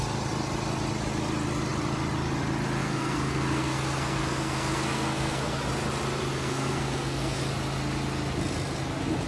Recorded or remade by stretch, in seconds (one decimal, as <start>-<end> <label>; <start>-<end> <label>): 0.0-2.8 recorded; 2.8-5.6 remade; 5.6-6.3 recorded; 6.3-7.4 remade; 7.4-9.3 recorded